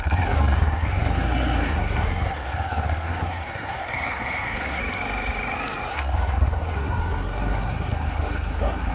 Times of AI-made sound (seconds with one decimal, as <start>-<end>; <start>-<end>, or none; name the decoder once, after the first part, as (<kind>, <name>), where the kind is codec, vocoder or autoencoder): 0.0-4.8 (codec, SNAC); 5.9-8.9